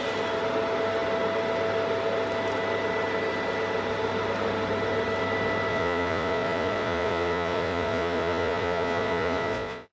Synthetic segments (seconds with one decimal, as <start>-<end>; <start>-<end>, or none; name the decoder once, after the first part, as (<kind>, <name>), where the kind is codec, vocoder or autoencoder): 5.7-9.9 (vocoder, Vocos)